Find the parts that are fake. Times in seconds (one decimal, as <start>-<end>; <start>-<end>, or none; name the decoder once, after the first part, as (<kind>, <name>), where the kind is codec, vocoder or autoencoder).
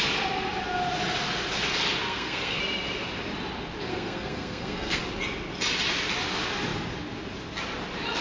2.0-2.6 (codec, SNAC); 3.9-5.0